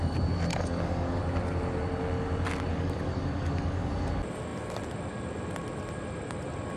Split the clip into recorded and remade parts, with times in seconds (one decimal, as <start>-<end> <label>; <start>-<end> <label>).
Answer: 0.0-0.5 recorded; 0.5-1.2 remade; 1.2-2.7 recorded; 2.7-4.1 remade; 4.1-6.8 recorded